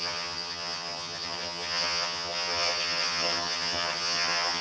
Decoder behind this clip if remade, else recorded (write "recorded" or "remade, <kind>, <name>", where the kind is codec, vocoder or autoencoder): remade, vocoder, HiFi-GAN